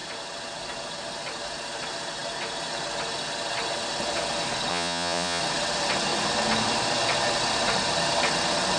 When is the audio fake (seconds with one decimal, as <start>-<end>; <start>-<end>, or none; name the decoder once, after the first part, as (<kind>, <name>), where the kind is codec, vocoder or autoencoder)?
4.7-5.4 (vocoder, Vocos)